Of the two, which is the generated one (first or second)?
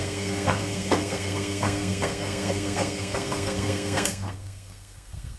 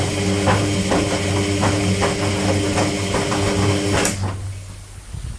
first